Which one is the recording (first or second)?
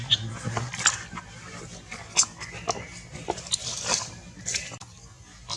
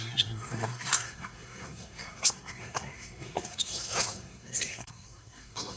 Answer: first